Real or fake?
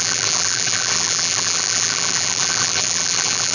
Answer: fake